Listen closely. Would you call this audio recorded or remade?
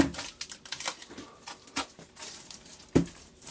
recorded